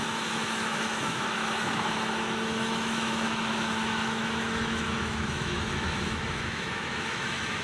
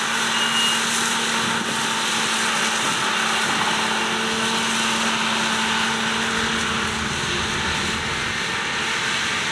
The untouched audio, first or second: second